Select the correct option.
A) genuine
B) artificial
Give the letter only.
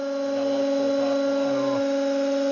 A